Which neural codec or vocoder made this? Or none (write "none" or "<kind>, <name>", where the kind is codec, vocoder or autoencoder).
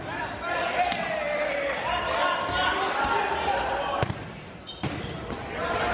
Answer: none